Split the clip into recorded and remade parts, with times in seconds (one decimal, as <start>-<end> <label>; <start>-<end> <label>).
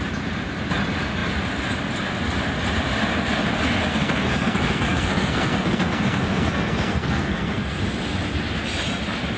0.0-3.9 recorded; 3.9-7.8 remade; 7.8-9.4 recorded